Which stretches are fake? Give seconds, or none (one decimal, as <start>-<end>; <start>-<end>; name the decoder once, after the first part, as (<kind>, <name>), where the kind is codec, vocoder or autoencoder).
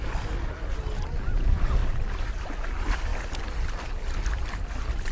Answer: none